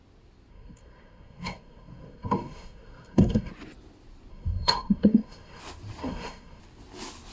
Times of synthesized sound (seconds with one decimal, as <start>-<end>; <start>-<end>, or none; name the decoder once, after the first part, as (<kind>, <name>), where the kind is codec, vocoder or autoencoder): 0.5-3.5 (codec, SNAC); 4.3-5.6; 6.0-6.6